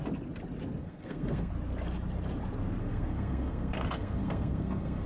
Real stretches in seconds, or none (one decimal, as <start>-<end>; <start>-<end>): 0.0-0.8; 1.5-2.8